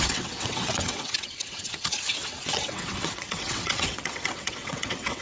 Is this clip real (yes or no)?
no